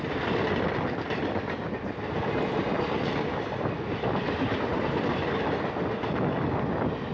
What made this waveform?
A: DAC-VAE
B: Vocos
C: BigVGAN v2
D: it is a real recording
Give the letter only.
D